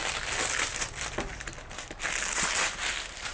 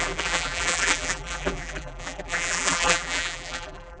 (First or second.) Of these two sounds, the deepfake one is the second